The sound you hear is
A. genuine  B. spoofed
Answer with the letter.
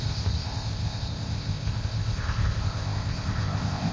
B